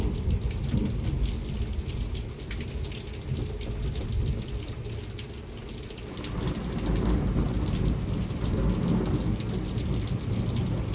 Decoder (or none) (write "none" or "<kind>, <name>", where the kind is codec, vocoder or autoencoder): none